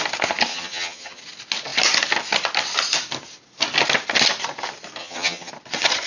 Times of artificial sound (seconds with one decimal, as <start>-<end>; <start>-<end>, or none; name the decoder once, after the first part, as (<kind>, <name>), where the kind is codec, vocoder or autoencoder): 0.5-1.2 (vocoder, HiFi-GAN); 5.0-5.5